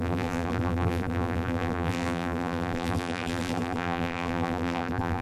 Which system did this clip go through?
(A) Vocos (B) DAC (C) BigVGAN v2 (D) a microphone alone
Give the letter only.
C